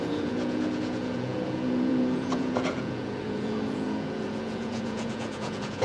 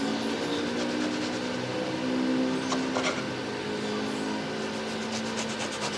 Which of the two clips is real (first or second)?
second